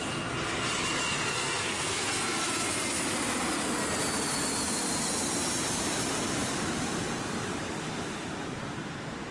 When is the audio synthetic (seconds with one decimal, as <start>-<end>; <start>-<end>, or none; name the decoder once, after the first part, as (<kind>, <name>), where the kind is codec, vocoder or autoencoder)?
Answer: 1.3-2.1 (codec, SNAC)